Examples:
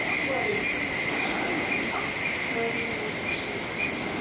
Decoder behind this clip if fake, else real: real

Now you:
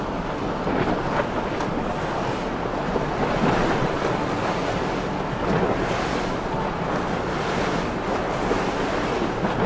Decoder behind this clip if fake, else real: real